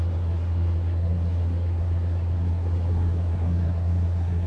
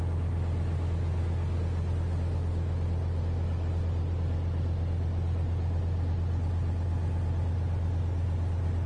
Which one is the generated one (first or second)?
first